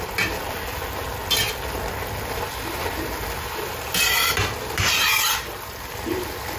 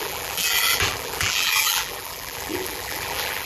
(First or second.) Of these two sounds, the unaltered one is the first